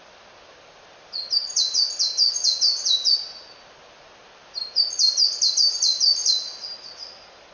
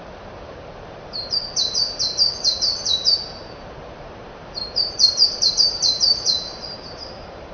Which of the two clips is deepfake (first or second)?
second